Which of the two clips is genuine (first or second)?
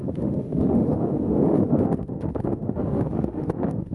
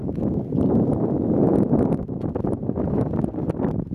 second